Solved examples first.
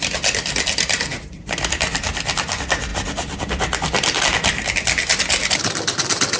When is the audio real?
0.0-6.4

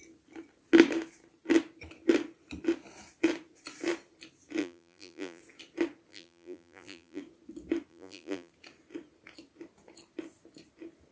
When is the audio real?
0.0-4.6; 5.4-6.1; 7.2-7.9; 8.5-11.1

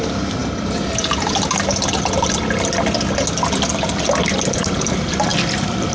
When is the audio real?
0.0-5.3

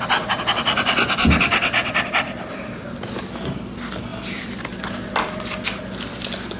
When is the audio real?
0.0-1.8; 2.9-4.1; 5.8-6.6

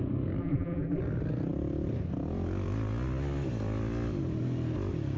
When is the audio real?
0.0-0.4; 1.0-5.2

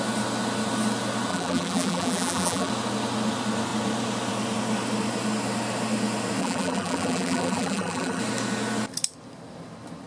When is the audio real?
0.0-1.3; 2.7-6.4; 8.2-10.1

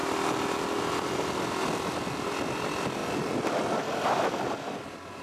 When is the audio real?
0.0-5.2